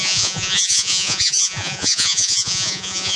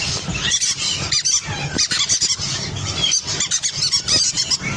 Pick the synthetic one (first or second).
first